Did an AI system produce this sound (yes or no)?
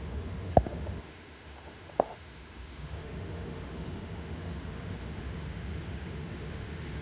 yes